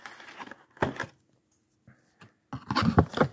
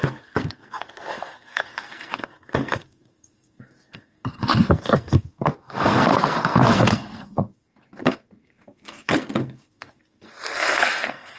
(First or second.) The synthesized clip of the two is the second